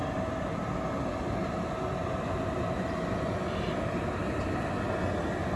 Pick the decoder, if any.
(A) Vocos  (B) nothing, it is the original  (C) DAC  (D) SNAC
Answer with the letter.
B